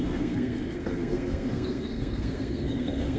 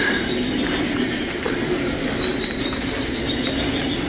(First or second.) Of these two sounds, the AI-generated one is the first